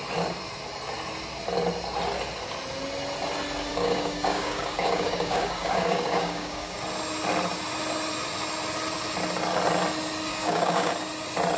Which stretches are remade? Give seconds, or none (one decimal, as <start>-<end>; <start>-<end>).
3.7-6.8; 10.3-10.9